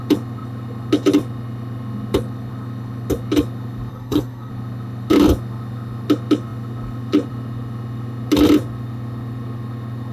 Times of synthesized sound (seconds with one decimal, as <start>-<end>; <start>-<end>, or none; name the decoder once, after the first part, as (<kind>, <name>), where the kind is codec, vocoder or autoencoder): 3.9-4.5 (codec, SNAC)

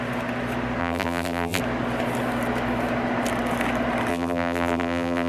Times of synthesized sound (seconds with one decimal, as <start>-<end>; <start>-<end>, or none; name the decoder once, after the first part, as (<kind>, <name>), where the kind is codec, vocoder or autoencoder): 0.8-1.6 (vocoder, BigVGAN v2); 4.1-5.3

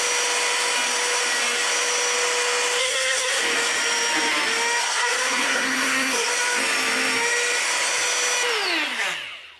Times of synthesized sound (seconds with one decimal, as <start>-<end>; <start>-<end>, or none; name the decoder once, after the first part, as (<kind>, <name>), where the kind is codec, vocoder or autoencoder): 2.8-3.4 (codec, SNAC); 4.8-6.3

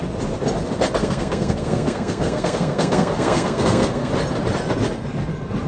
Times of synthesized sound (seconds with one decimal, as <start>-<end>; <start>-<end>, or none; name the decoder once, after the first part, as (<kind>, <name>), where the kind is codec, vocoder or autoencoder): 1.0-4.1 (codec, SNAC)

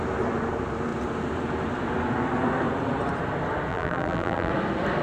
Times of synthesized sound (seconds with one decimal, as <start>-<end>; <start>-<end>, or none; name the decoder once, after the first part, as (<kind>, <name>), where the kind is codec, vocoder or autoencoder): 3.7-4.5 (vocoder, BigVGAN v2)

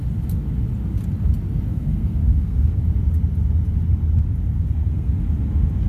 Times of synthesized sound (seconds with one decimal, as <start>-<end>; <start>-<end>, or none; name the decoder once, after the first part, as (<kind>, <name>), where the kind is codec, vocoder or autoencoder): 1.7-2.8 (codec, SNAC); 4.5-5.1

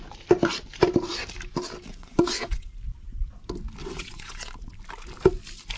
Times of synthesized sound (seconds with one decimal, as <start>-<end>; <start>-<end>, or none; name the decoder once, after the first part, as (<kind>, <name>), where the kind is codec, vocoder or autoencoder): 1.9-2.7 (vocoder, WaveNeXt); 3.8-4.5

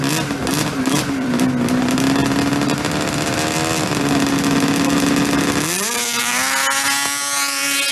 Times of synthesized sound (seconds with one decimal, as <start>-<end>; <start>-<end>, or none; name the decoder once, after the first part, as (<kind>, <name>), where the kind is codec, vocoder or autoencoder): 0.8-1.3 (vocoder, BigVGAN v2)